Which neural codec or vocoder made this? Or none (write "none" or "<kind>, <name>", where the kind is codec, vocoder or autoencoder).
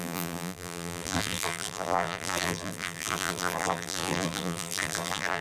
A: vocoder, BigVGAN v2